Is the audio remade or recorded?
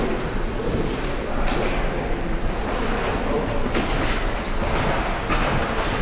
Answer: recorded